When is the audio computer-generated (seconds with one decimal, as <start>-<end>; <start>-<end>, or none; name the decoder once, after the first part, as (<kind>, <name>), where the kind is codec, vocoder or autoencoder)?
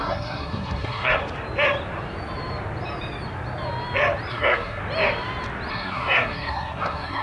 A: 0.0-1.2 (codec, SNAC); 4.3-4.8; 5.7-7.2